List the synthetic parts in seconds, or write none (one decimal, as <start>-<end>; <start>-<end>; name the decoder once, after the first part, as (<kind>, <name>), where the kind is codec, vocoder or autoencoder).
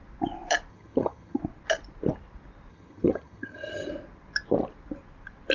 0.7-1.4 (vocoder, HiFi-GAN); 2.7-3.9